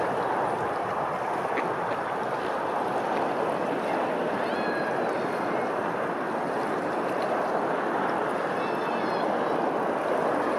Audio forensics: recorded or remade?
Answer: recorded